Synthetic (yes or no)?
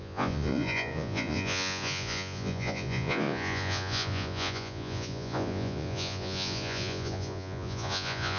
yes